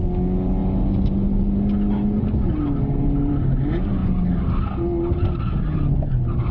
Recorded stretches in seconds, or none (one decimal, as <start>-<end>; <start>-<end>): 0.0-6.5